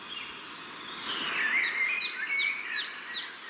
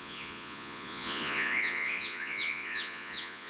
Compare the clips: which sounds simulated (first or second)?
second